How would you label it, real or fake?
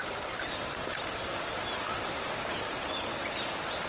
real